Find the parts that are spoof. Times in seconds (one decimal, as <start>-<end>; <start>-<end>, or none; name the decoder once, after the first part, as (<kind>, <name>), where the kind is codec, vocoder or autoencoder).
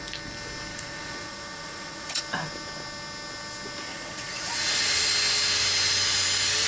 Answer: 0.7-2.2 (vocoder, Vocos); 3.9-5.1